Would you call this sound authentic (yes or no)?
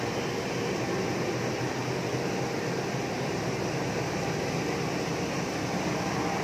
yes